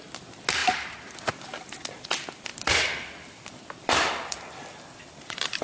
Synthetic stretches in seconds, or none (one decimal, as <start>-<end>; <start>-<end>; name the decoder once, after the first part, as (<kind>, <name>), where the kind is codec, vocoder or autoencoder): 0.6-1.3 (vocoder, BigVGAN v2); 2.5-5.6